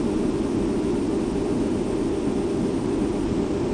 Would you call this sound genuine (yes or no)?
yes